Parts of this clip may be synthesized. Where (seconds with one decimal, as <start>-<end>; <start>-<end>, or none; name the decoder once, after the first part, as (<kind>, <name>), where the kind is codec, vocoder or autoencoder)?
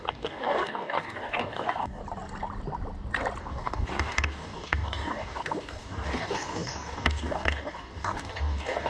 0.0-2.0 (codec, DAC); 3.4-8.9